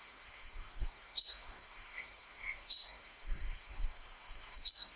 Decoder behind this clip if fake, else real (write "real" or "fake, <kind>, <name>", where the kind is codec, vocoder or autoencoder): fake, codec, SNAC